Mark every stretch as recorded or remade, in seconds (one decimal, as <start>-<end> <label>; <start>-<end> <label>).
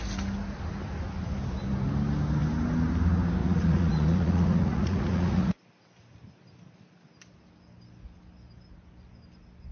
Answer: 0.0-3.4 recorded; 3.4-5.6 remade; 5.6-9.7 recorded